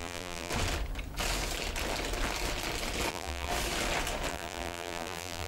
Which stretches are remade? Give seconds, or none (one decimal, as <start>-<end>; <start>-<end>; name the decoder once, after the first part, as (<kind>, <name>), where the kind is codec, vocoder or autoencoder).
0.0-0.5 (vocoder, BigVGAN v2); 3.1-3.5; 4.3-5.5